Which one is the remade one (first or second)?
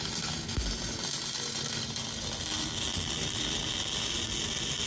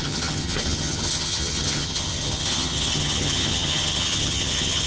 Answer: second